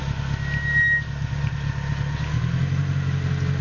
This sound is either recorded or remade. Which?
recorded